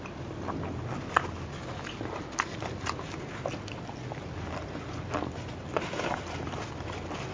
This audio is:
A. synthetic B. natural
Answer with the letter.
B